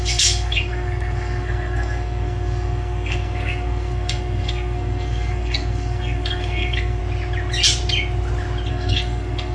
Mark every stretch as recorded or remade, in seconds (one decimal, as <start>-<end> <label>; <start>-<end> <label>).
0.0-7.0 remade; 7.0-8.7 recorded; 8.7-9.5 remade